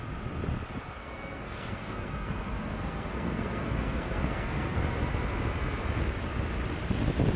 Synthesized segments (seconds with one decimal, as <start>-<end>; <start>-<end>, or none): 1.0-4.8